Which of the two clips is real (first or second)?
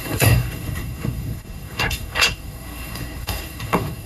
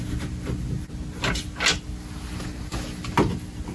second